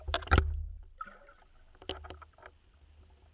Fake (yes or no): no